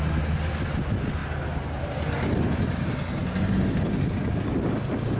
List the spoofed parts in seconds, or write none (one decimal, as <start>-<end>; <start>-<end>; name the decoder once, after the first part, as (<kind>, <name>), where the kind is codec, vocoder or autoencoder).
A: none